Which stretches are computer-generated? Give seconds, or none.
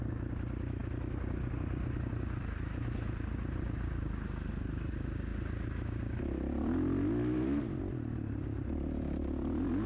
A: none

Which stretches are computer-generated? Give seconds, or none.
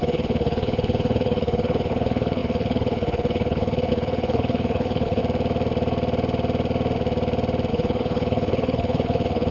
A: 0.0-5.2 (codec, HILCodec); 7.7-9.5